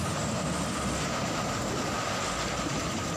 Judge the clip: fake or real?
real